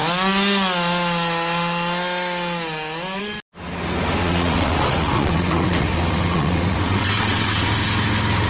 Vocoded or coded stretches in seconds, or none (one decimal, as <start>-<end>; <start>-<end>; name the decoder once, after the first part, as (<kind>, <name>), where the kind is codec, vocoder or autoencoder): 4.2-7.7 (vocoder, WaveNeXt)